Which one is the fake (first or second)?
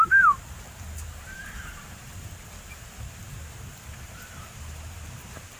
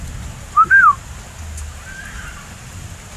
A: first